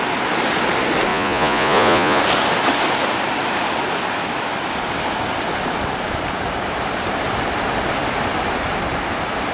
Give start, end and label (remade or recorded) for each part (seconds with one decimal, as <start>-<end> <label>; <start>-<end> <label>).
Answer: 0.0-1.1 recorded; 1.1-2.2 remade; 2.2-9.5 recorded